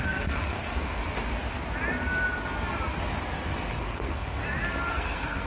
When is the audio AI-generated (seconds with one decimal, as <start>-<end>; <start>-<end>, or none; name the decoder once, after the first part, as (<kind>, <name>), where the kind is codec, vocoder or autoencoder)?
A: 0.0-1.0 (codec, SNAC); 3.8-4.4; 4.9-5.5